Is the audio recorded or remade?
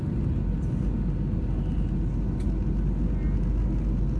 recorded